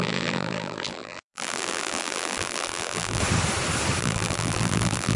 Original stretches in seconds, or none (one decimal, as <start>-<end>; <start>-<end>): 3.2-4.0